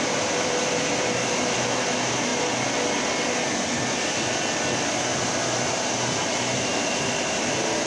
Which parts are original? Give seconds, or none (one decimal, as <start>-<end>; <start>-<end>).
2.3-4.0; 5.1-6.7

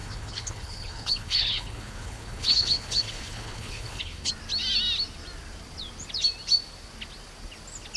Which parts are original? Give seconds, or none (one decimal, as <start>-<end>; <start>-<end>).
4.3-8.0

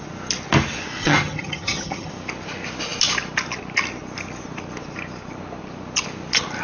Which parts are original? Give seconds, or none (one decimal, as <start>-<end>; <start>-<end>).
0.0-1.0; 2.1-6.6

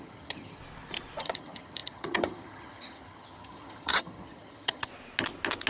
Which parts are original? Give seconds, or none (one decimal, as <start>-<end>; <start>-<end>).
0.6-1.2; 4.9-5.7

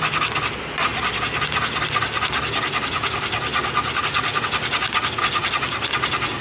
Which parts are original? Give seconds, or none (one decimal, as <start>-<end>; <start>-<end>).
0.0-6.4

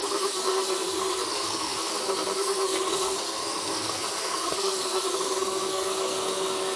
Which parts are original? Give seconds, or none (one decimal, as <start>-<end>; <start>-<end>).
none